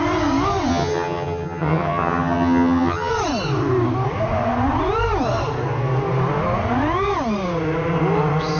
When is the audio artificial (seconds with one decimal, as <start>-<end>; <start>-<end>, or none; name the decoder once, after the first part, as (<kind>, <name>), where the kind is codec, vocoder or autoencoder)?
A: 0.7-3.1 (vocoder, HiFi-GAN)